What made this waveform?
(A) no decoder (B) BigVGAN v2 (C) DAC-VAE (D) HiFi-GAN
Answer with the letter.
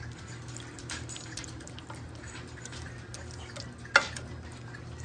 A